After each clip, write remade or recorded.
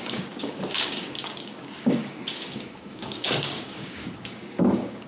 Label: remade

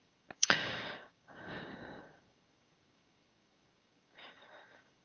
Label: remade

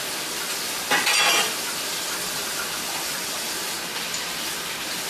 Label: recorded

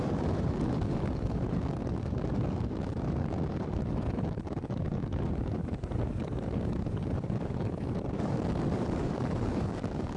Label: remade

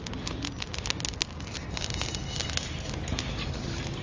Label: recorded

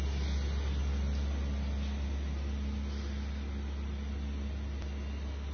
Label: recorded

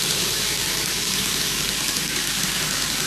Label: remade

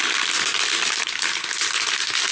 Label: recorded